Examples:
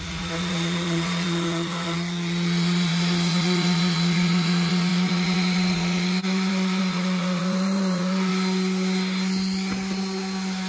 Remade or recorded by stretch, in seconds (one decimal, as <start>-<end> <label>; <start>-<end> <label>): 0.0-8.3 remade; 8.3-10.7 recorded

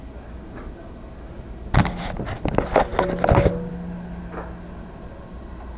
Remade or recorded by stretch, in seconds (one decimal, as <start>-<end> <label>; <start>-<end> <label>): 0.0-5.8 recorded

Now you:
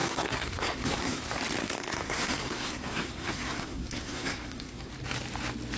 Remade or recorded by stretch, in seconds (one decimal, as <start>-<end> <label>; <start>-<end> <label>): 0.0-1.2 remade; 1.2-1.6 recorded; 1.6-4.9 remade; 4.9-5.8 recorded

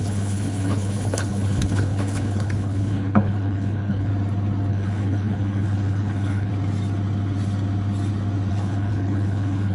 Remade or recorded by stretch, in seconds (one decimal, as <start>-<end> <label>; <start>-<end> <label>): 0.0-4.1 remade; 4.1-4.7 recorded; 4.7-6.5 remade; 6.5-8.5 recorded; 8.5-9.7 remade

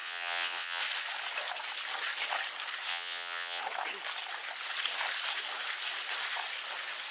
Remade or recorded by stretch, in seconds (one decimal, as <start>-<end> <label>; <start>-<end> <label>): 0.0-0.8 remade; 0.8-2.9 recorded; 2.9-3.6 remade; 3.6-7.1 recorded

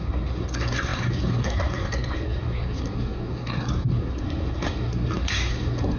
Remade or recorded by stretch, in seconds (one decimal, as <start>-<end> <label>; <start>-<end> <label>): 0.0-6.0 remade